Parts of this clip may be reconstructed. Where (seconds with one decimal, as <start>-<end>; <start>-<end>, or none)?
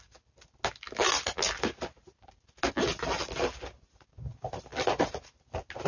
none